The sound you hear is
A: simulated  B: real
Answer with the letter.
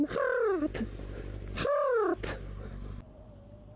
B